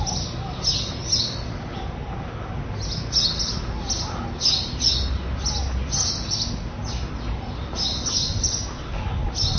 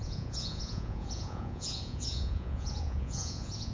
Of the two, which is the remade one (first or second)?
second